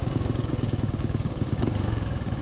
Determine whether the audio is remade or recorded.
remade